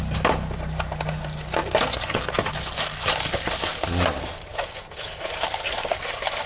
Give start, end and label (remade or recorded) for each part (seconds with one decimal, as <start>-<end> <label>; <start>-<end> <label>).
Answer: 0.0-4.5 recorded; 4.5-5.2 remade; 5.2-6.5 recorded